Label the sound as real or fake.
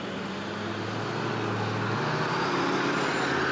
real